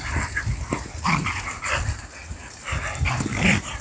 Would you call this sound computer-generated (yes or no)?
no